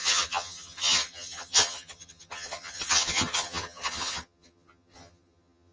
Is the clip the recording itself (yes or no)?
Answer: no